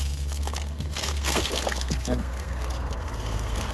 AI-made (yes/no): yes